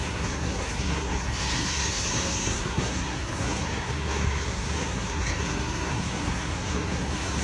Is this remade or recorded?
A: remade